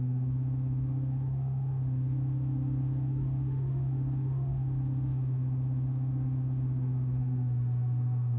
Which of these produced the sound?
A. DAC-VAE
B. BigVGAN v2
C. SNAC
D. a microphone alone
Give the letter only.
A